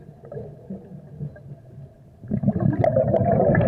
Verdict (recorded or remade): recorded